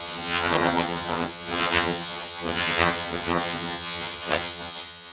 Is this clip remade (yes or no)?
yes